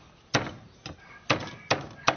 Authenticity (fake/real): real